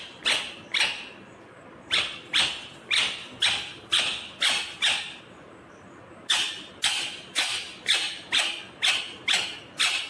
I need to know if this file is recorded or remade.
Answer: remade